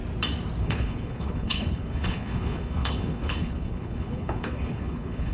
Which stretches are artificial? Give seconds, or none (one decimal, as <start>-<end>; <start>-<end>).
0.6-5.3